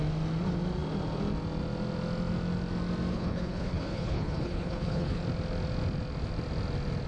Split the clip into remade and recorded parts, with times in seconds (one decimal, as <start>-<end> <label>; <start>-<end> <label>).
0.0-3.1 recorded; 3.1-5.2 remade; 5.2-7.1 recorded